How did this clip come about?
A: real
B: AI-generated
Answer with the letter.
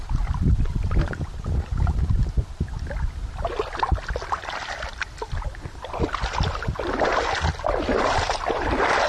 A